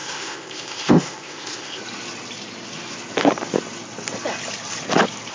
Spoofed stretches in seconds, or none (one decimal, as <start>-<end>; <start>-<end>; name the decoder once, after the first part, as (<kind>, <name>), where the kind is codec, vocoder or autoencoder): 0.0-1.8 (codec, ZipCodec)